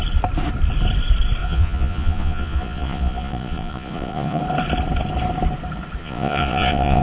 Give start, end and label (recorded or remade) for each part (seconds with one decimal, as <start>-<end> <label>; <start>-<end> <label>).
0.0-1.4 recorded; 1.4-4.4 remade; 4.4-6.0 recorded; 6.0-7.0 remade